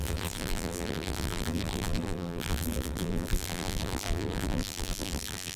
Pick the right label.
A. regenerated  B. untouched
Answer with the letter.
A